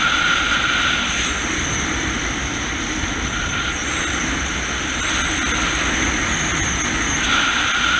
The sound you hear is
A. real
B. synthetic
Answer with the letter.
A